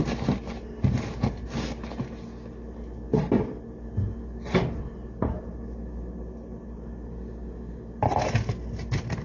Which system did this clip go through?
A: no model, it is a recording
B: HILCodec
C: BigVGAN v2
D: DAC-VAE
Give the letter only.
A